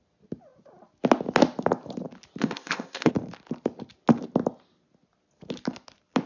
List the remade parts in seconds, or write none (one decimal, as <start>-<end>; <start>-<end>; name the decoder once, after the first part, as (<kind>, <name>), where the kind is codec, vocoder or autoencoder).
2.4-3.1 (codec, ZipCodec)